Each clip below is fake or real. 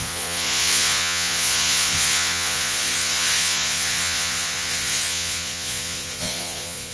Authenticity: fake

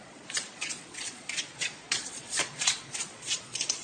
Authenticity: fake